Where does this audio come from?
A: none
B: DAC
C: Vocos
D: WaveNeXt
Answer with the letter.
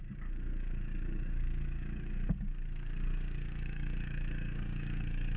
B